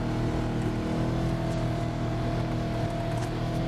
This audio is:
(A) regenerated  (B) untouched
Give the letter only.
B